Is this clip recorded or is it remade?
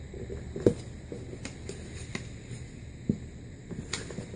recorded